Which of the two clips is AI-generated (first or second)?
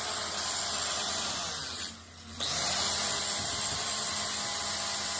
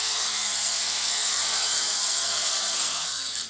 second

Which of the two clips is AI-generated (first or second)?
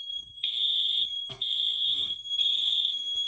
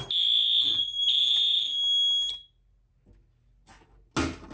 first